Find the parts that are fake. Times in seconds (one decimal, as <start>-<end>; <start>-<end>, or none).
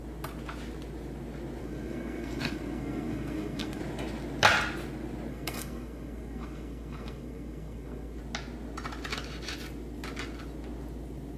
1.6-3.8; 5.3-8.2